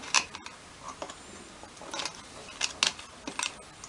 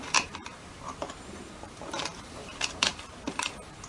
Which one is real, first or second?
first